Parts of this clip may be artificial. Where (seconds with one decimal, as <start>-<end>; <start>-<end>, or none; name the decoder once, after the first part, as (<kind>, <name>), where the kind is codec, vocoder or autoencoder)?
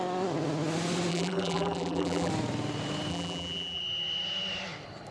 1.1-2.3 (vocoder, BigVGAN v2); 3.1-3.8